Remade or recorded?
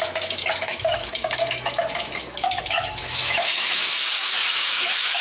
remade